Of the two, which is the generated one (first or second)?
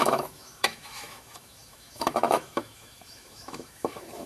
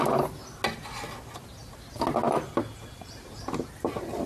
first